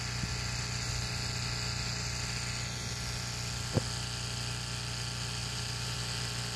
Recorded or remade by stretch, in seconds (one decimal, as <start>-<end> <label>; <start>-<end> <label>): 0.0-5.4 recorded; 5.4-6.0 remade; 6.0-6.6 recorded